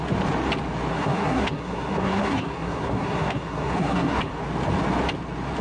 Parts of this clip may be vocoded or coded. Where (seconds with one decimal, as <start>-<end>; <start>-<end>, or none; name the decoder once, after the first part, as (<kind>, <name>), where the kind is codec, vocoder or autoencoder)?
0.9-4.3 (codec, SNAC)